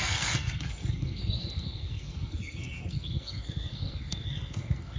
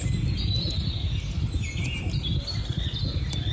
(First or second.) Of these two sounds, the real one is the second